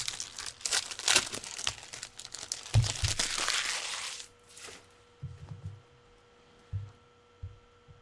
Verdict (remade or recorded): recorded